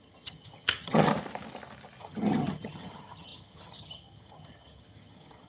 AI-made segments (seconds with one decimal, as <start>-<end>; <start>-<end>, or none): 0.0-1.1; 2.0-5.5